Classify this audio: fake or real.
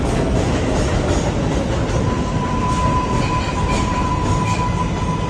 real